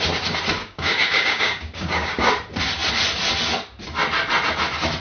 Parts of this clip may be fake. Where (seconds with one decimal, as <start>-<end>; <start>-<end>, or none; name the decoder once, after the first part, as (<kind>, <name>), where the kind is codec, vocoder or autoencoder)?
0.6-2.3 (codec, DAC)